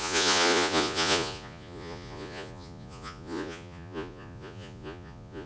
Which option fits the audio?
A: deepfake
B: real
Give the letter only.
A